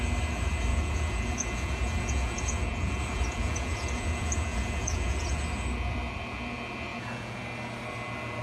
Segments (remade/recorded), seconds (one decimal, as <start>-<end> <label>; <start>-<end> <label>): 0.0-0.7 recorded; 0.7-5.4 remade; 5.4-6.9 recorded; 6.9-7.4 remade; 7.4-8.4 recorded